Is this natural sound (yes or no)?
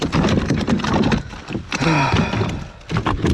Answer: yes